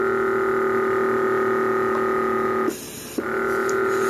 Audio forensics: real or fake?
real